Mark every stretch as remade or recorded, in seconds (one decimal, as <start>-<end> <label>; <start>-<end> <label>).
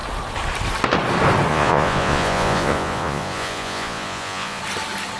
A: 0.0-1.5 recorded; 1.5-4.6 remade; 4.6-5.2 recorded